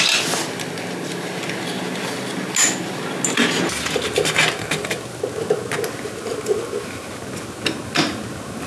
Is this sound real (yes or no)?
yes